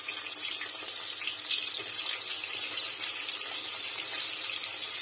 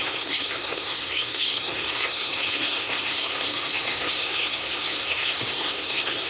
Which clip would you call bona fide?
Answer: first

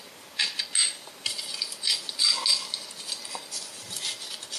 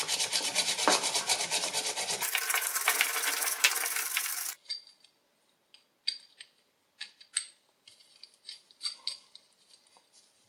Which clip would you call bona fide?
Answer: first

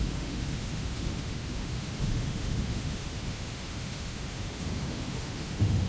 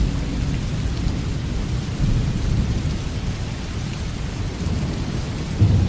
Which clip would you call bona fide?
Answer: second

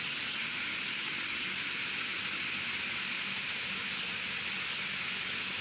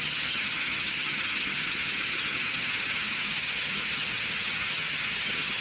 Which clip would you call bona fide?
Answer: first